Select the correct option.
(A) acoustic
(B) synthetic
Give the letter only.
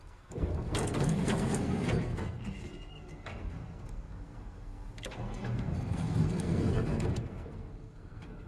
B